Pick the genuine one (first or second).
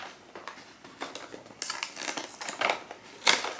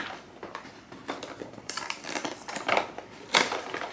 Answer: first